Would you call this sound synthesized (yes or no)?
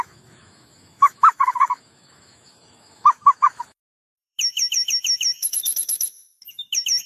yes